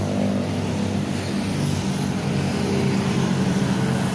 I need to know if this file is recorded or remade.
recorded